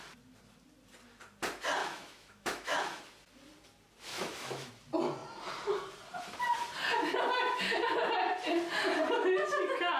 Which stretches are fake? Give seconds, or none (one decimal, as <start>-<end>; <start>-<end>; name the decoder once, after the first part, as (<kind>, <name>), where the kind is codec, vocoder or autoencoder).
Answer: 1.8-3.0 (autoencoder, DAC-VAE); 4.1-4.7